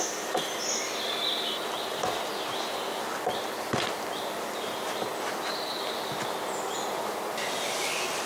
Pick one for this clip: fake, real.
real